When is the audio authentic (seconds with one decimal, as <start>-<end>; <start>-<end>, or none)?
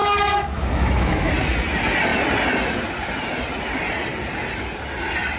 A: 1.3-5.4